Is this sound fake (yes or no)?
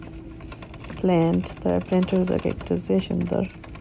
no